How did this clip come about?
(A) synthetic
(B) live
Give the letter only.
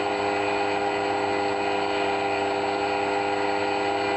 B